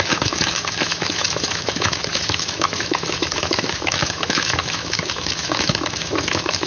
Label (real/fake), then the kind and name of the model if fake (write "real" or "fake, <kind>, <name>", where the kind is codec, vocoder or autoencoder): fake, autoencoder, DAC-VAE